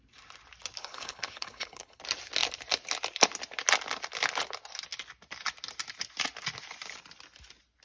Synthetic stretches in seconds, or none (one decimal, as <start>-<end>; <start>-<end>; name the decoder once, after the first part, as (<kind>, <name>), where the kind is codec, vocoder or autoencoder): 0.8-2.0 (codec, HILCodec)